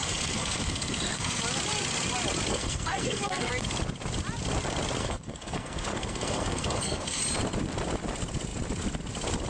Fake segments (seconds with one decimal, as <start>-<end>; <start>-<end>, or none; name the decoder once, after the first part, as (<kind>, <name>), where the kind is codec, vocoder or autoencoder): 0.0-1.4 (codec, SNAC); 2.5-3.5; 5.0-7.2